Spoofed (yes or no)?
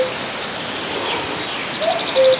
no